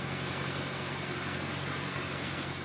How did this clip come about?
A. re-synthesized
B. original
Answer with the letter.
A